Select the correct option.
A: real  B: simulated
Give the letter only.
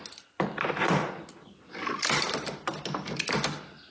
A